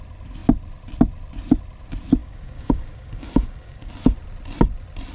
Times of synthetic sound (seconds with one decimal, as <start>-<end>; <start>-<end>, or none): 2.2-3.9